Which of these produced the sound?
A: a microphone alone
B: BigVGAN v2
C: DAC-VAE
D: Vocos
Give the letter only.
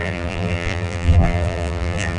B